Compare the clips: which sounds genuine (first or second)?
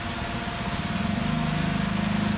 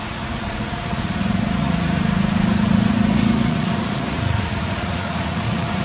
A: first